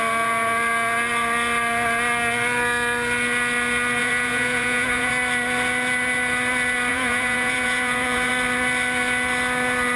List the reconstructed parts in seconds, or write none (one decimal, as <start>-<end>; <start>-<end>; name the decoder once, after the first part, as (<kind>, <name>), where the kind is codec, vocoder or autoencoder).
4.0-5.1 (vocoder, Vocos); 6.9-8.3